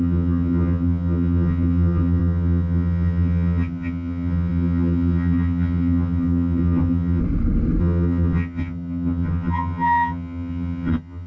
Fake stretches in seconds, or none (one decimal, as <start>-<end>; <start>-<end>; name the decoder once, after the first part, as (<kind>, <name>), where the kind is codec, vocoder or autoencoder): 0.0-7.2 (vocoder, HiFi-GAN); 7.8-11.3